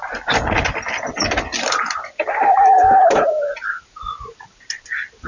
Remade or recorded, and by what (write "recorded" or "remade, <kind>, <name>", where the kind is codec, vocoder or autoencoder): recorded